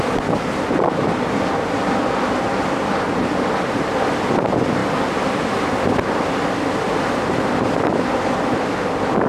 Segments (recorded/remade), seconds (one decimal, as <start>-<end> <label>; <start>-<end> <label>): 0.0-4.8 remade; 4.8-5.6 recorded; 5.6-9.3 remade

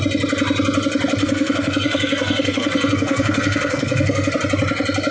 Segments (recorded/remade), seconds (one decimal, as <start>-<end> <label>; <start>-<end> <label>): 0.0-1.2 recorded; 1.2-4.3 remade; 4.3-5.1 recorded

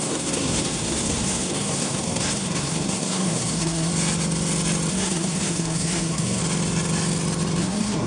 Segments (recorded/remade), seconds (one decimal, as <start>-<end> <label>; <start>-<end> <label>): 0.0-3.9 remade; 3.9-4.9 recorded; 4.9-6.4 remade; 6.4-7.6 recorded; 7.6-8.1 remade

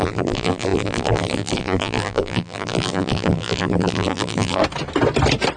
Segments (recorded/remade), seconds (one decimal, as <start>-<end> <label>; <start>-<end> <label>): 0.0-4.6 remade; 4.6-5.6 recorded

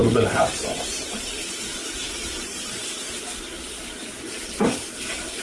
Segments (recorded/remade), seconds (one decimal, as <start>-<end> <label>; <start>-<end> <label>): 0.0-3.2 remade; 3.2-5.4 recorded

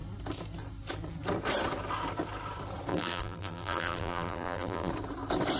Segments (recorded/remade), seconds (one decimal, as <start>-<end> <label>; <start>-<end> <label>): 0.0-2.9 recorded; 2.9-4.9 remade; 4.9-5.6 recorded

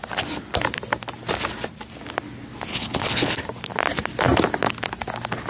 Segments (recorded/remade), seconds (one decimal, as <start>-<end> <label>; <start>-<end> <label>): 0.0-2.7 recorded; 2.7-3.4 remade; 3.4-5.5 recorded

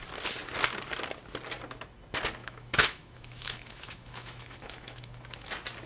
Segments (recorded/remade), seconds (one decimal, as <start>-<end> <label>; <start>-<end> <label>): 0.0-2.4 recorded; 2.4-5.5 remade; 5.5-5.9 recorded